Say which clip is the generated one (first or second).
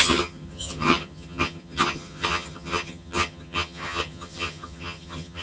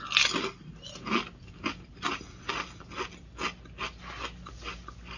first